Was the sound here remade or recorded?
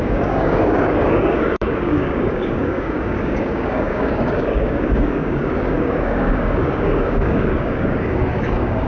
remade